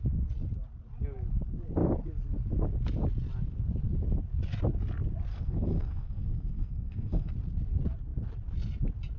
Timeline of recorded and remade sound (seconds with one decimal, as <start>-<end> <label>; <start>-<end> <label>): 0.0-5.3 recorded; 5.3-7.3 remade; 7.3-9.2 recorded